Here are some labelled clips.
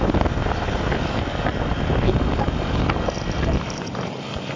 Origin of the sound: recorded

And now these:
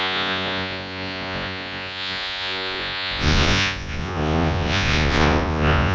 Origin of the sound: remade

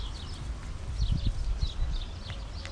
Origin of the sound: recorded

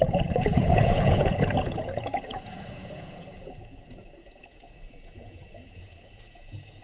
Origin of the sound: remade